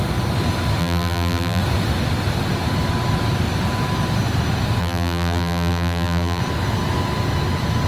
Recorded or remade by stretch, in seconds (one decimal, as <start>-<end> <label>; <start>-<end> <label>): 0.0-0.8 recorded; 0.8-1.6 remade; 1.6-4.8 recorded; 4.8-6.4 remade; 6.4-7.9 recorded